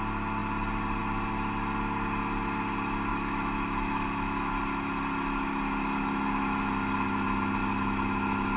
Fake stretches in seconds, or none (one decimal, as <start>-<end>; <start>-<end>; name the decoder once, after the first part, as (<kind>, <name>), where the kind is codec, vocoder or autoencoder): 3.1-4.5 (autoencoder, DAC-VAE); 7.6-8.6